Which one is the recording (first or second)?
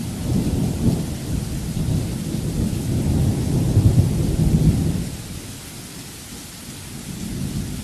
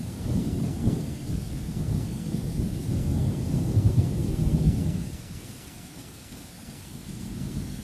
first